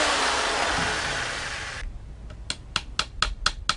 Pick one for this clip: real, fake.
real